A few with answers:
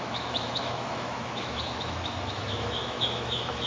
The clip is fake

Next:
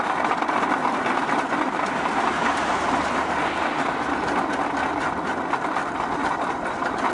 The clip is real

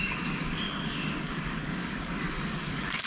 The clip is fake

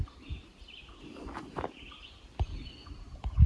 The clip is fake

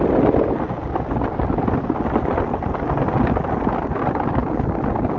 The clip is real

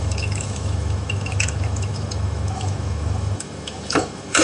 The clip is fake